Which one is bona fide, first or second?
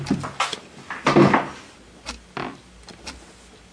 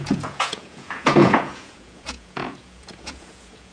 first